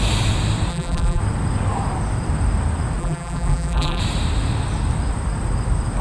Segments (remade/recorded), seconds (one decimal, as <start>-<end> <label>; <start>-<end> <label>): 0.0-0.7 recorded; 0.7-1.2 remade; 1.2-3.0 recorded; 3.0-4.0 remade; 4.0-6.0 recorded